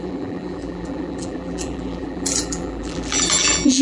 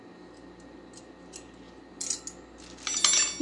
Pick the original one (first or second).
second